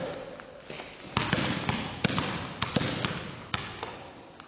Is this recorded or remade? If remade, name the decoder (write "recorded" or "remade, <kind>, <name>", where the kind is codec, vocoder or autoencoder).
recorded